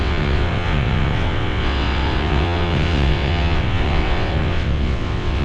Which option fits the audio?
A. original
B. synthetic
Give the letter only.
B